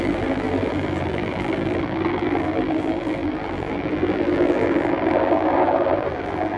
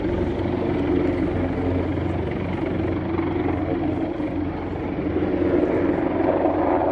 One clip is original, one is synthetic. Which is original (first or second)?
second